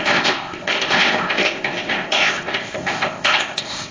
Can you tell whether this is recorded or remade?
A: remade